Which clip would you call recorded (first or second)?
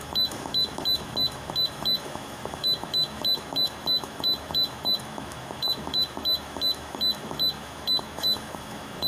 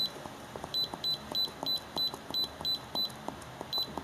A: second